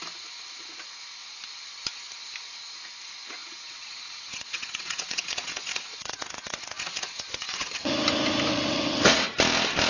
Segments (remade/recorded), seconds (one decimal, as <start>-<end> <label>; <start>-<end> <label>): 0.0-3.4 recorded; 3.4-7.9 remade; 7.9-8.5 recorded; 8.5-9.3 remade; 9.3-9.9 recorded